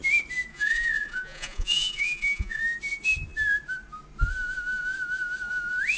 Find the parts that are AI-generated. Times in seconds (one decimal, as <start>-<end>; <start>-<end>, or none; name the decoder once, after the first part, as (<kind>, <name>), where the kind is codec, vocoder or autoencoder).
0.5-2.6 (vocoder, Vocos)